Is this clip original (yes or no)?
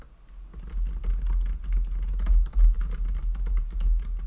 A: yes